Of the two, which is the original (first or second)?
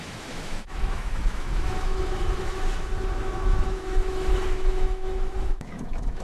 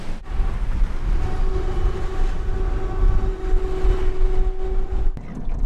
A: second